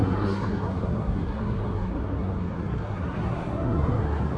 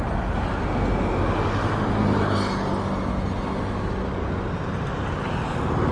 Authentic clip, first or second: second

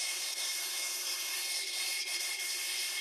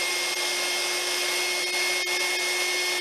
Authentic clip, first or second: second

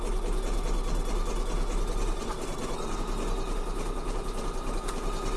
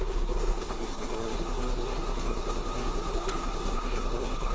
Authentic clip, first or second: first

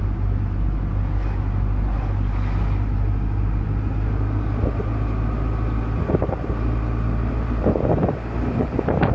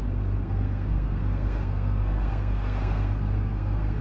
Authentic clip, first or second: first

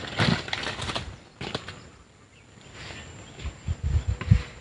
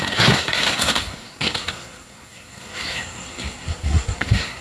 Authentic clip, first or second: first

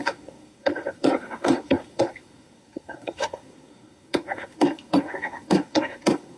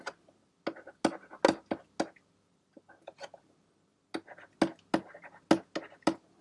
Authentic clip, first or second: second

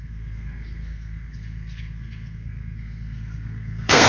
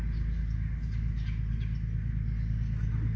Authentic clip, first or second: second